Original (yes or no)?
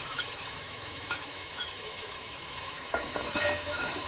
no